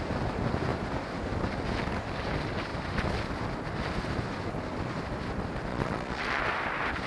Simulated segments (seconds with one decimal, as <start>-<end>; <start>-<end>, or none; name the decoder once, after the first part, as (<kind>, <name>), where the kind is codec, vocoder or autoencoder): 5.7-6.4 (vocoder, Vocos)